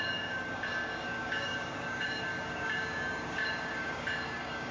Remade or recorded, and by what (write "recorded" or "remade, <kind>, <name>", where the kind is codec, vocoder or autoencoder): remade, codec, DAC